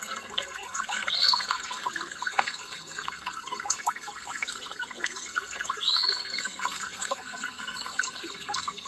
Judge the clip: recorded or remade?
remade